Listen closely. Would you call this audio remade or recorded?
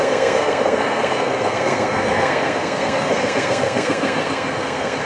remade